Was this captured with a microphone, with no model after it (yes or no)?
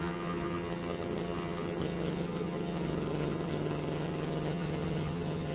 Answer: no